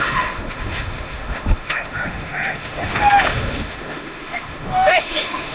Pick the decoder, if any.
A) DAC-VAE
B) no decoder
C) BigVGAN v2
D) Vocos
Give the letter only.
A